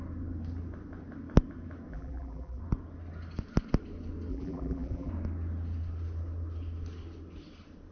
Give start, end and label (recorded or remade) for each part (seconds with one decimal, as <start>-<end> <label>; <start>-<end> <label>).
0.0-1.9 recorded; 1.9-2.6 remade; 2.6-4.3 recorded; 4.3-5.1 remade; 5.1-7.9 recorded